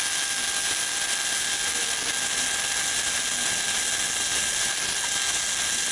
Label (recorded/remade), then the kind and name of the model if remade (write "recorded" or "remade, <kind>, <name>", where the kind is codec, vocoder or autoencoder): recorded